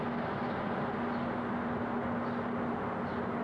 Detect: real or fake real